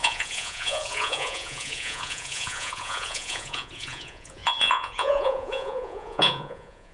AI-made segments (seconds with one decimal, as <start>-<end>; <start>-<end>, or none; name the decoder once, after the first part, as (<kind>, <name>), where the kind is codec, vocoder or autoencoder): 0.0-6.9 (vocoder, Vocos)